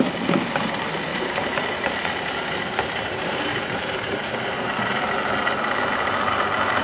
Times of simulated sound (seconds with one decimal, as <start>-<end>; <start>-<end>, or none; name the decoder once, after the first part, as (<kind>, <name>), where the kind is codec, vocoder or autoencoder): 1.1-5.1 (vocoder, BigVGAN v2)